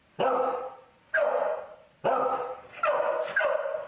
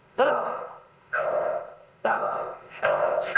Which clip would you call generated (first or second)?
second